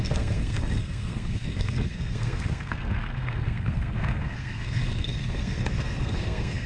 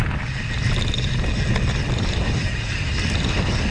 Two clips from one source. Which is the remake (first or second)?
first